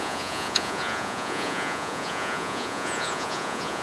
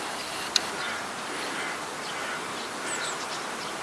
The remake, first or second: first